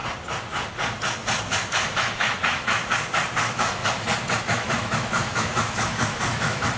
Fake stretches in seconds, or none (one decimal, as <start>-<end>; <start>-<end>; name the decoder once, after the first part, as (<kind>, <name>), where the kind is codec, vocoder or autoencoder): 1.7-2.8 (autoencoder, DAC-VAE); 3.4-3.8; 4.4-6.8